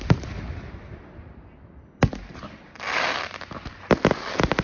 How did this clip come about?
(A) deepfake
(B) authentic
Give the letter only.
B